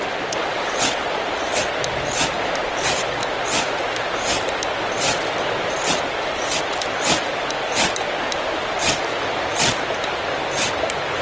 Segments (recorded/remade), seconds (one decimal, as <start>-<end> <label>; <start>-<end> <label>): 0.0-0.4 recorded; 0.4-1.0 remade; 1.0-11.2 recorded